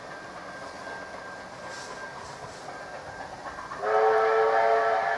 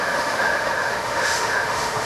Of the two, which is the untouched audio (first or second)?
first